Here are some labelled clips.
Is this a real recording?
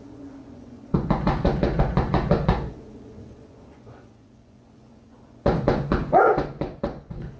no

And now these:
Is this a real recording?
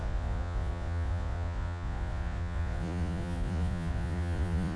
no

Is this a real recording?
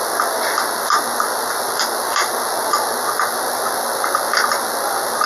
yes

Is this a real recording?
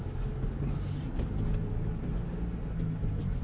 yes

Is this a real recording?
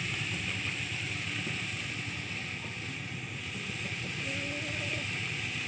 yes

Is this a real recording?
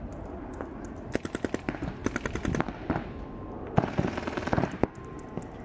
yes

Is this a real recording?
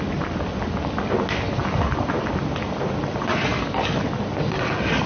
yes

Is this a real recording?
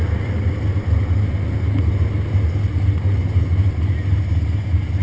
yes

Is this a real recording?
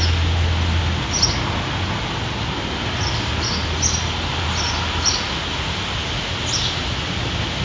yes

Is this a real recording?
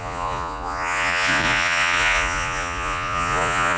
no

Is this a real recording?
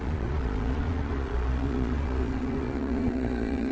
no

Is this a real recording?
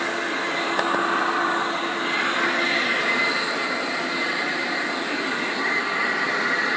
yes